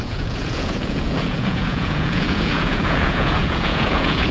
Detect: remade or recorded remade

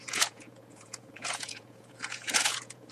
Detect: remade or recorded remade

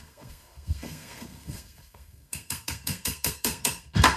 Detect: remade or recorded remade